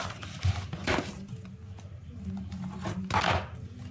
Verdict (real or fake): real